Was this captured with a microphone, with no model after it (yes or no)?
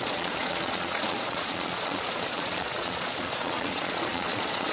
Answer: no